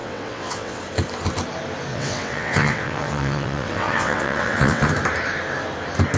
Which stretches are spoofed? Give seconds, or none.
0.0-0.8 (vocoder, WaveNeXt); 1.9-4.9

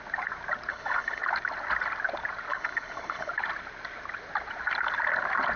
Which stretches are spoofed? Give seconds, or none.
0.7-1.2 (codec, HILCodec); 2.5-3.3

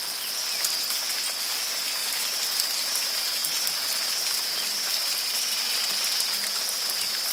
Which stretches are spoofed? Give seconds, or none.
none

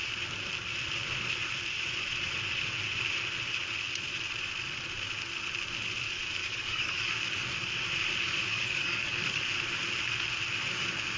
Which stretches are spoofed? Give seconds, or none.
6.4-7.1 (codec, DAC); 8.5-9.4

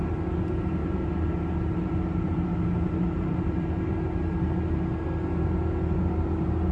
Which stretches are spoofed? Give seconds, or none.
0.8-3.7 (vocoder, BigVGAN v2)

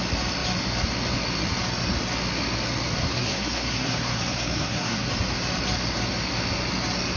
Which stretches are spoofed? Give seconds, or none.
3.1-5.1 (codec, SNAC)